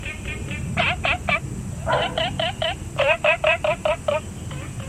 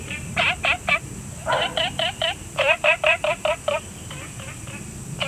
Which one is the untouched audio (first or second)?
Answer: first